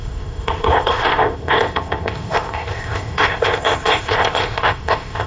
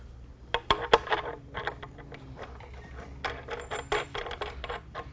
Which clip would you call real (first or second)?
second